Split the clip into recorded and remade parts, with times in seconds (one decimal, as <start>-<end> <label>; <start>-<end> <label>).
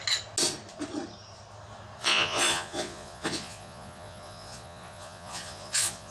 0.0-2.0 recorded; 2.0-6.1 remade